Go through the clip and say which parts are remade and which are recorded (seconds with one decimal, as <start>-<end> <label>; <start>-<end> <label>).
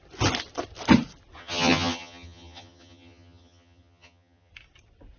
0.0-1.4 recorded; 1.4-4.5 remade; 4.5-5.2 recorded